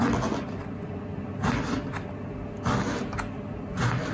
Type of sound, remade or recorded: recorded